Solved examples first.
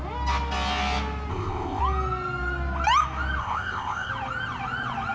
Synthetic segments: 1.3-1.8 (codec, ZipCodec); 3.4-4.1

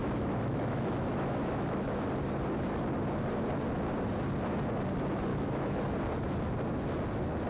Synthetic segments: 0.0-2.1 (autoencoder, DAC-VAE); 5.3-5.8

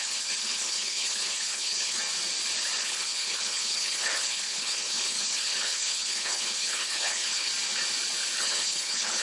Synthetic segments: 0.0-2.0 (codec, HILCodec); 2.8-7.5; 8.4-9.2